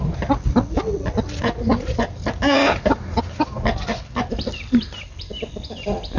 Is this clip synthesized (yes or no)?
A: no